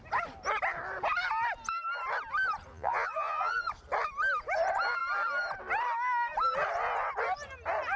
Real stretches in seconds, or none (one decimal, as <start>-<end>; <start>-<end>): 0.0-2.7; 3.5-8.0